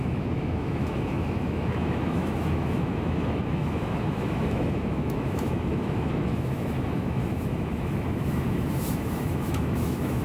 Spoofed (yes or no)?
yes